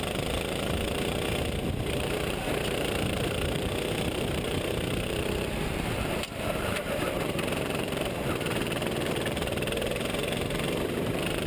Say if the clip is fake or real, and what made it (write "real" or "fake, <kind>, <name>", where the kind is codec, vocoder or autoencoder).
fake, vocoder, BigVGAN v2